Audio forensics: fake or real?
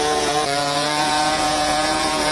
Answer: fake